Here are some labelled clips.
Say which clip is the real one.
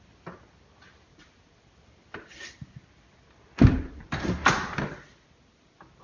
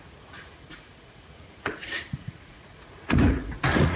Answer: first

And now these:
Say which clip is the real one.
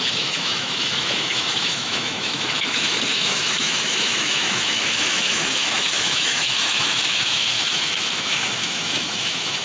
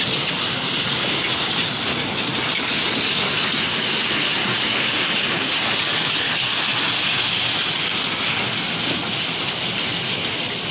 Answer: second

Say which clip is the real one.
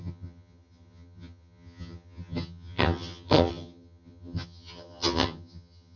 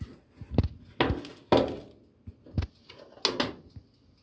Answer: second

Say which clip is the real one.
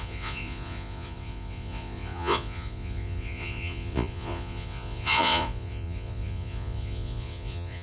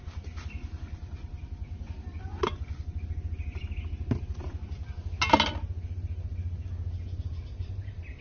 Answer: second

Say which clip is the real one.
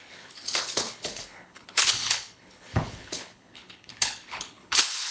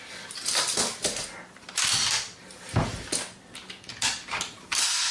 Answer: second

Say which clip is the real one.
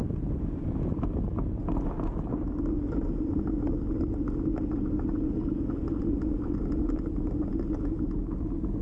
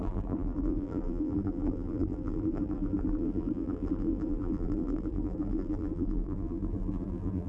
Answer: first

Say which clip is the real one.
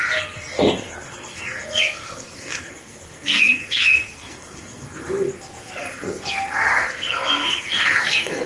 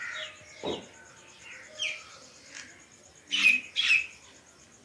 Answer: second